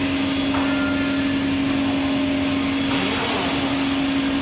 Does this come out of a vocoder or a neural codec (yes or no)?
no